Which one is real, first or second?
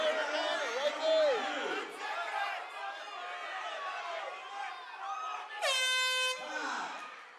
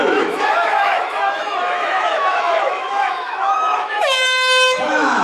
first